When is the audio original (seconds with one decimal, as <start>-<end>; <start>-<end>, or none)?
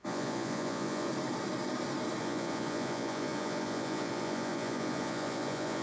1.1-2.2